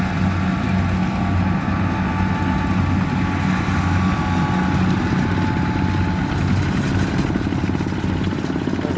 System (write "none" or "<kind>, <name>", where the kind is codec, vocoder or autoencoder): none